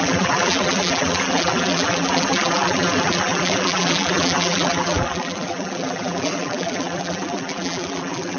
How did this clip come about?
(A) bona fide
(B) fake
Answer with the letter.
B